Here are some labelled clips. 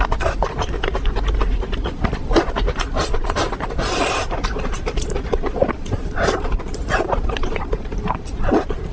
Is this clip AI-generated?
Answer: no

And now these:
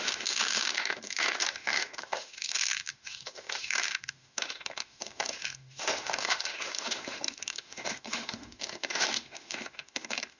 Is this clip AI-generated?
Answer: yes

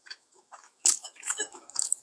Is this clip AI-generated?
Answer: yes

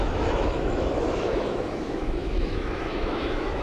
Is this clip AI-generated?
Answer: yes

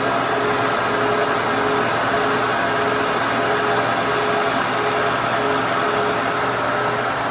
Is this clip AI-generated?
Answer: no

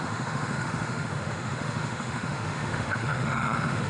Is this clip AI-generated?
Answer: yes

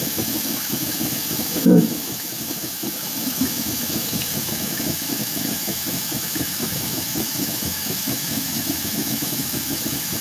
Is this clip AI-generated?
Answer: yes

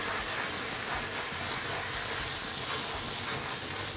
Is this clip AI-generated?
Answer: no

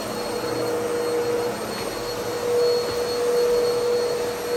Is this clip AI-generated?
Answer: no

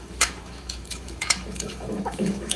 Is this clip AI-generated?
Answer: yes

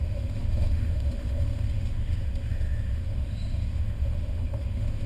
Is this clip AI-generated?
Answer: yes